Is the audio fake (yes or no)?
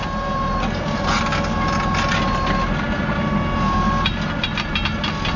no